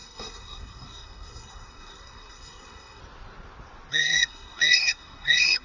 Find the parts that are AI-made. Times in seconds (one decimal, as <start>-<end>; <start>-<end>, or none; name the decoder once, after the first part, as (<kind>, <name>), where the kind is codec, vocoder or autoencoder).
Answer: 0.0-3.0 (codec, SNAC); 3.9-5.6

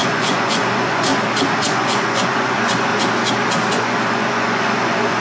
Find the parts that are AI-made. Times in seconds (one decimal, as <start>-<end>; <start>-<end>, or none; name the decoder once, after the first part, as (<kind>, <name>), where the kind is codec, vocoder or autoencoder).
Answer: 0.0-1.1 (vocoder, Vocos); 1.6-2.9; 3.7-5.2